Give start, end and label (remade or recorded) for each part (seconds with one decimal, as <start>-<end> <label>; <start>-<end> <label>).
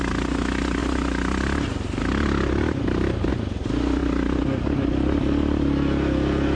0.0-6.6 recorded